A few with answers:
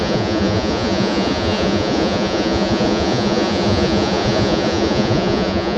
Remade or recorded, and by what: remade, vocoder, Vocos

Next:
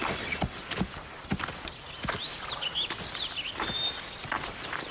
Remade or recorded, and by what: recorded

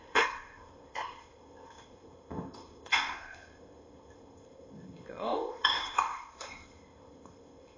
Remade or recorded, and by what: remade, codec, ZipCodec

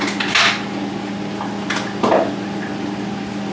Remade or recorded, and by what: recorded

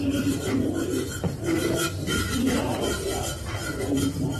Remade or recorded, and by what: remade, vocoder, BigVGAN v2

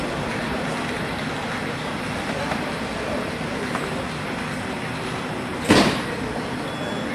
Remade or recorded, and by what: recorded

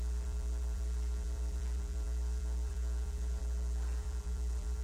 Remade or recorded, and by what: remade, vocoder, BigVGAN v2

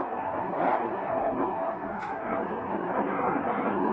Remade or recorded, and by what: remade, codec, SNAC